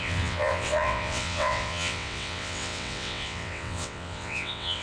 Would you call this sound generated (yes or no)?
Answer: yes